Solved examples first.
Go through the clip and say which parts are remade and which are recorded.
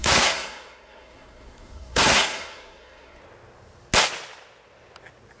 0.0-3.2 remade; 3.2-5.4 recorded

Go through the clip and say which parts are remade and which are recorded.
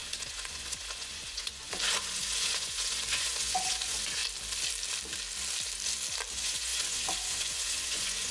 0.0-4.2 remade; 4.2-6.3 recorded; 6.3-8.3 remade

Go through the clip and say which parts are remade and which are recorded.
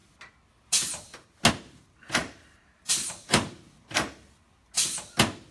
0.0-2.2 recorded; 2.2-2.9 remade; 2.9-3.3 recorded; 3.3-4.6 remade; 4.6-5.5 recorded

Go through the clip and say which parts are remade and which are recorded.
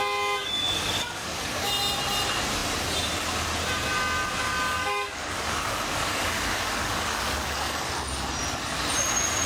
0.0-0.4 recorded; 0.4-1.7 remade; 1.7-4.2 recorded; 4.2-7.9 remade; 7.9-9.5 recorded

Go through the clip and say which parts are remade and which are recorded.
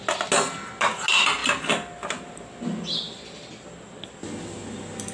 0.0-5.1 recorded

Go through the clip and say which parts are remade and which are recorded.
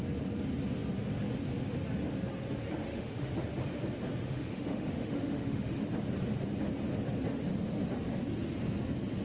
0.0-2.8 recorded; 2.8-3.3 remade; 3.3-4.2 recorded; 4.2-5.8 remade; 5.8-9.2 recorded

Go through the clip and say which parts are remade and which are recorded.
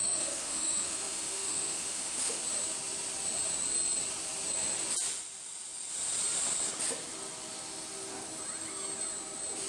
0.0-2.4 remade; 2.4-9.7 recorded